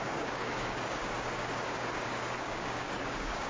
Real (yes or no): no